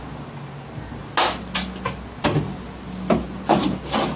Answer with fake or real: real